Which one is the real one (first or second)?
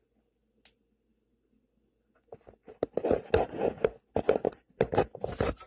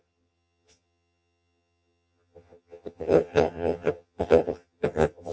first